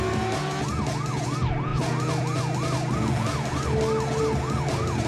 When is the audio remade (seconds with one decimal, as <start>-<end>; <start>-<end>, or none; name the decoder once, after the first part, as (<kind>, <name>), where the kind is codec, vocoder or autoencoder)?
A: none